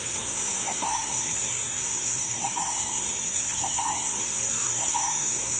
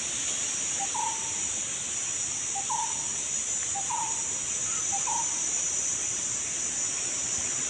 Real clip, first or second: second